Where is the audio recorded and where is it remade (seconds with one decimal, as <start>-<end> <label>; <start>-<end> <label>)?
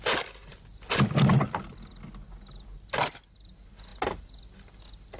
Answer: 0.0-5.2 recorded